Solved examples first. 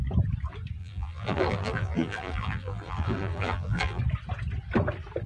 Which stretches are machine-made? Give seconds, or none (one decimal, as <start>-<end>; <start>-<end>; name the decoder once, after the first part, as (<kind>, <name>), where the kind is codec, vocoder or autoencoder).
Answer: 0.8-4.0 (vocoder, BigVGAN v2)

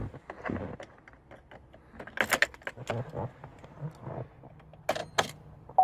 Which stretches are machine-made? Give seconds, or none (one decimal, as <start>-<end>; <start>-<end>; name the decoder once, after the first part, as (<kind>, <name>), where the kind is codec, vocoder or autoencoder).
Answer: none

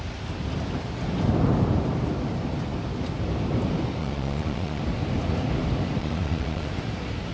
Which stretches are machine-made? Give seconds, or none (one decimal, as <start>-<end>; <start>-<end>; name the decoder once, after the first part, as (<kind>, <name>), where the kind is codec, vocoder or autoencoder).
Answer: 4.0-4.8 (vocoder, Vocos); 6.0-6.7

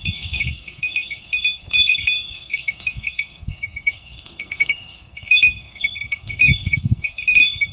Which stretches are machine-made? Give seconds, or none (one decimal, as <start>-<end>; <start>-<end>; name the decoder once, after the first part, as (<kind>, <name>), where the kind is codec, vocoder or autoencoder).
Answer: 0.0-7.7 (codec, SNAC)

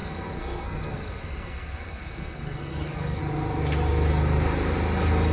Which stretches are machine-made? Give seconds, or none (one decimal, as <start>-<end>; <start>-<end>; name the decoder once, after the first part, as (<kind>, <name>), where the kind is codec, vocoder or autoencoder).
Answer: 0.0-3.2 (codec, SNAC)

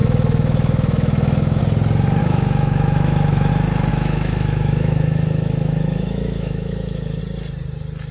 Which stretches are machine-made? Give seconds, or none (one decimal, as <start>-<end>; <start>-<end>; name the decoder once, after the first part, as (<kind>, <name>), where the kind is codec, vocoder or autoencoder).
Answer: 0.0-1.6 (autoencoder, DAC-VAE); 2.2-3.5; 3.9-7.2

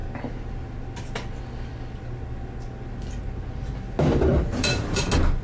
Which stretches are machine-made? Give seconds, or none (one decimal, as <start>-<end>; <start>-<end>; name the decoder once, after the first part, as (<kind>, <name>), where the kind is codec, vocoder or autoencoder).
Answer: 4.3-5.0 (vocoder, BigVGAN v2)